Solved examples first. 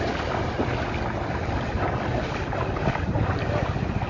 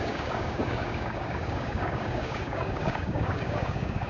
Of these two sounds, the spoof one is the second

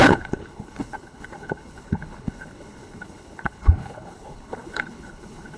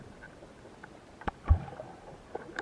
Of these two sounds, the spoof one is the first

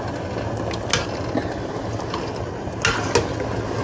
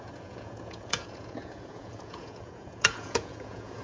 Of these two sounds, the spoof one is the second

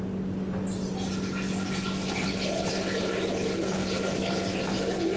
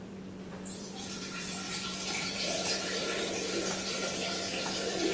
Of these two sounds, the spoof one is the second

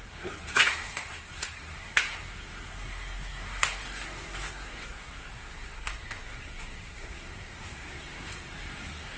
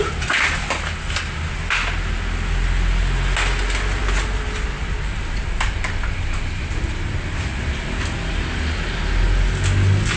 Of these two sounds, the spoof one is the first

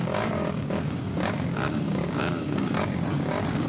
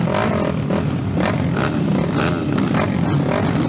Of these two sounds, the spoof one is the first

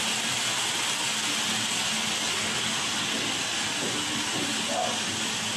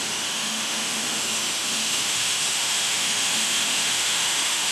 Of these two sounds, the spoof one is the second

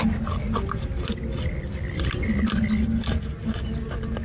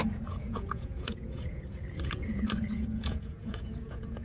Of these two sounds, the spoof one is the second